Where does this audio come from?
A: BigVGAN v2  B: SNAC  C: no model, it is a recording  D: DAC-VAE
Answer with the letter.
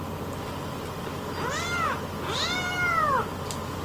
C